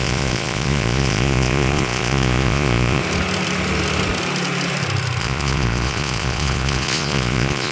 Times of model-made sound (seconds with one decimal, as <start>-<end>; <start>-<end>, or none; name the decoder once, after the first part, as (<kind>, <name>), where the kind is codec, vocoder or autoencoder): 0.0-3.0 (vocoder, Vocos); 5.2-7.7